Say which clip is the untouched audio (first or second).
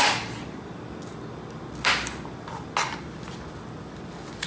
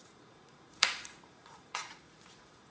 first